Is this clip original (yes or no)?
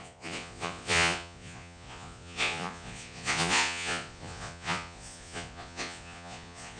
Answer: no